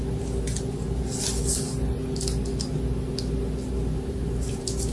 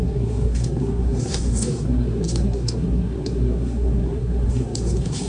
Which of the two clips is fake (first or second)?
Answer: second